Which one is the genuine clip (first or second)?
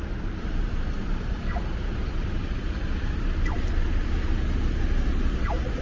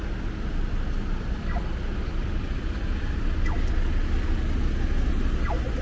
second